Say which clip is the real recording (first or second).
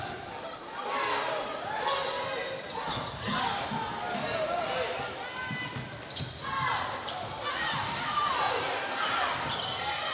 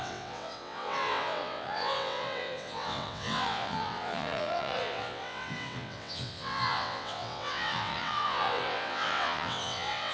first